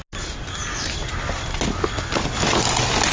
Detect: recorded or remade recorded